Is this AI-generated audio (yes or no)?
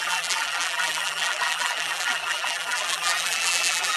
yes